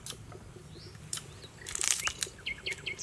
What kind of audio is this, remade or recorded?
remade